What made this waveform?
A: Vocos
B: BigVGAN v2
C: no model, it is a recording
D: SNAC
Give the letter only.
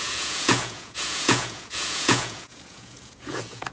A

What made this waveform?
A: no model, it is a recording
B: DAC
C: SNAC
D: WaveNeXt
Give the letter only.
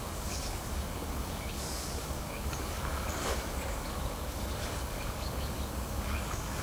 B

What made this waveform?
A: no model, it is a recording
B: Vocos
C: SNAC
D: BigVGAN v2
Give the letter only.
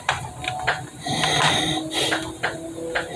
A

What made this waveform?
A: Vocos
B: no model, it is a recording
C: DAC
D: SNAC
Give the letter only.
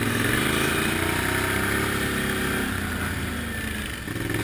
B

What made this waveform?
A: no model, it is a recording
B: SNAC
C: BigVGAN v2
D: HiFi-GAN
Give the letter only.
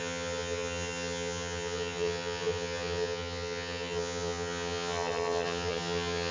D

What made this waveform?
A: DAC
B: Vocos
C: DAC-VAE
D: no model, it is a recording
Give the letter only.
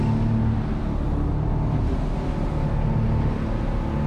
D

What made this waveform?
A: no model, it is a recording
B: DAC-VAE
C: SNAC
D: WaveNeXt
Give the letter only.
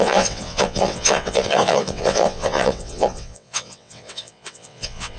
D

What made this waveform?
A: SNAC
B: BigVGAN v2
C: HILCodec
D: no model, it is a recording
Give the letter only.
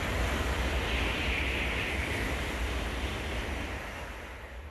D